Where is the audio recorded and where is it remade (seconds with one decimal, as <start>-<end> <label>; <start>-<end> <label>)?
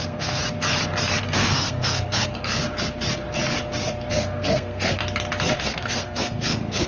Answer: 0.0-0.4 remade; 0.4-1.2 recorded; 1.2-2.6 remade; 2.6-4.1 recorded; 4.1-5.0 remade; 5.0-5.6 recorded; 5.6-6.9 remade